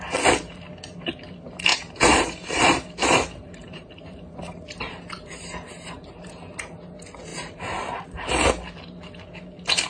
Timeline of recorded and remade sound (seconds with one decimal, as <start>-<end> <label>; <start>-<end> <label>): 0.0-1.7 recorded; 1.7-6.4 remade; 6.4-7.3 recorded; 7.3-8.0 remade; 8.0-9.9 recorded